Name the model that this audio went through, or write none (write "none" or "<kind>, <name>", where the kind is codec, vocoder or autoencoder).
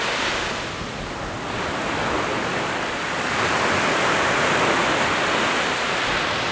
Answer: none